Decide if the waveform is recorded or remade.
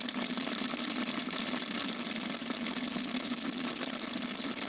recorded